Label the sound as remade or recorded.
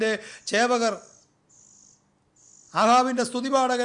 recorded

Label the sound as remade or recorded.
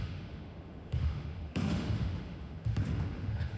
remade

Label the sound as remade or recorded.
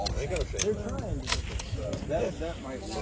recorded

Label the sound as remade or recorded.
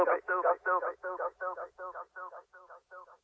remade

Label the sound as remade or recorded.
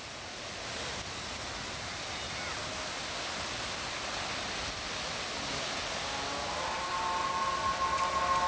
recorded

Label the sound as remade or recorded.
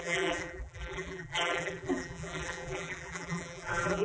remade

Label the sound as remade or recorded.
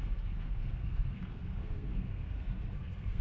remade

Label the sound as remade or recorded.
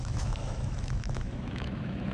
remade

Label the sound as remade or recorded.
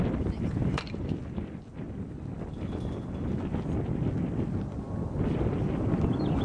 remade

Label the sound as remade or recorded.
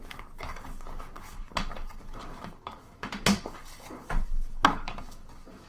remade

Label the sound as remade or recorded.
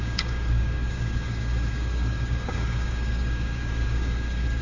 remade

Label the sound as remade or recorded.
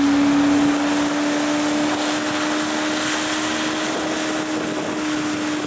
recorded